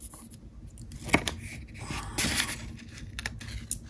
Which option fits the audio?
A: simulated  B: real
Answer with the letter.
B